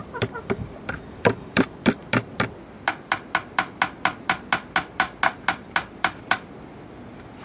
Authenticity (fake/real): real